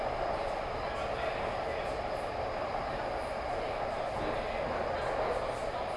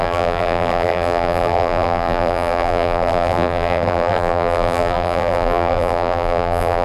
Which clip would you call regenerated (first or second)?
second